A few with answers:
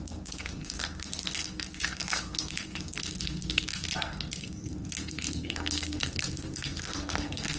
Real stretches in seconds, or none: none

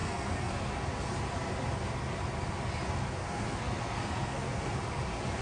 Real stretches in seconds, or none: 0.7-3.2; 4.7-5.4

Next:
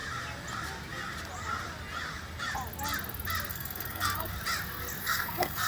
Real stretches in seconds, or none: 0.0-3.5; 4.3-5.0

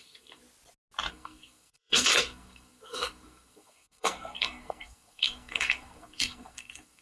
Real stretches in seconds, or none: 0.4-1.1

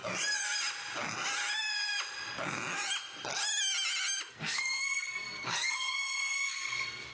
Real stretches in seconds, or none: 0.0-4.3

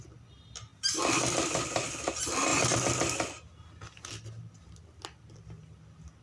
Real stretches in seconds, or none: 0.0-6.2